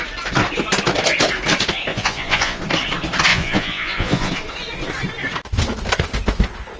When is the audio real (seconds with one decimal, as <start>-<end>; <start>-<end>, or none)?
0.0-1.9; 2.6-3.3; 4.3-6.8